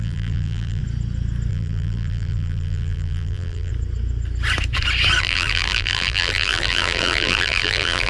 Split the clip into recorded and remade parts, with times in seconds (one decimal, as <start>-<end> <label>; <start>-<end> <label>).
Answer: 0.0-0.8 remade; 0.8-1.5 recorded; 1.5-3.7 remade; 3.7-5.2 recorded; 5.2-8.1 remade